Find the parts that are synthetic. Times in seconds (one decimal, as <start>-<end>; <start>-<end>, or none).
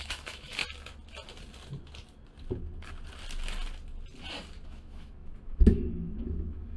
0.0-0.6; 4.7-6.8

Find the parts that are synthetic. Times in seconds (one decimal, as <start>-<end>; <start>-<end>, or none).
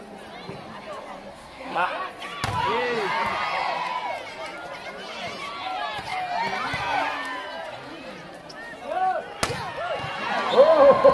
1.3-1.9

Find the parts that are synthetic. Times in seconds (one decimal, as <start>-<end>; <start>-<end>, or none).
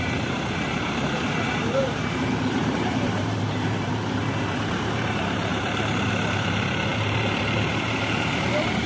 0.0-8.9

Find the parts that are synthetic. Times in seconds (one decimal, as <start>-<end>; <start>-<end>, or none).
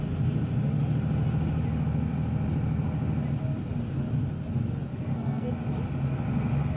4.9-5.5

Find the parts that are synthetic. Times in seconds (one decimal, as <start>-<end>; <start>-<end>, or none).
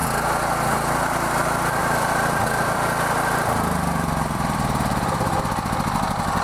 0.0-1.0; 1.8-5.4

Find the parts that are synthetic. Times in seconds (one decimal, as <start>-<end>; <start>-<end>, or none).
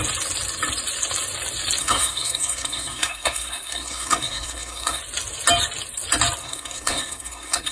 1.8-5.0; 6.4-7.7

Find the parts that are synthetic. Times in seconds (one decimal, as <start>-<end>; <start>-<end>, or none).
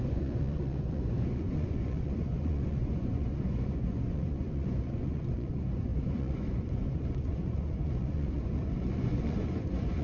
0.0-10.0